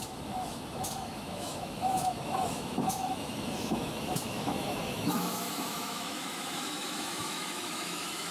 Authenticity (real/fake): fake